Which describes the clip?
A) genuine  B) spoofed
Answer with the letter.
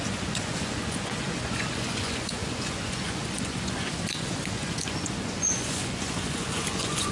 B